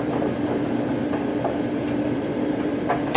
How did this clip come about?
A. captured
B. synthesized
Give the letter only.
B